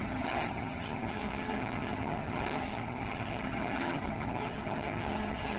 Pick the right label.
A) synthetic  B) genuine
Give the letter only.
A